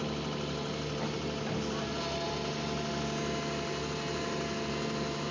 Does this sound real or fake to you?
real